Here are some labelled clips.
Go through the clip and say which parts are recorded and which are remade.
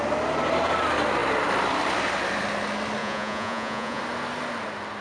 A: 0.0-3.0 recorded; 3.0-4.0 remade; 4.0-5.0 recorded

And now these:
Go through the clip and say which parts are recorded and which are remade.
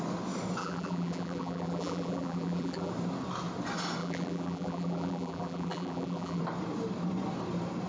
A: 0.0-0.6 recorded; 0.6-2.9 remade; 2.9-4.0 recorded; 4.0-6.4 remade; 6.4-7.9 recorded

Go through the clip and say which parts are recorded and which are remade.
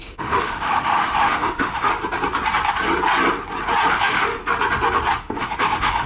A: 0.0-1.9 remade; 1.9-3.9 recorded; 3.9-4.4 remade; 4.4-5.2 recorded; 5.2-6.1 remade